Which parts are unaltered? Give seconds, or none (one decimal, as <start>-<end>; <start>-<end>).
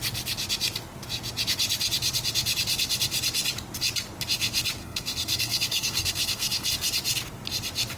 0.0-4.8; 6.7-8.0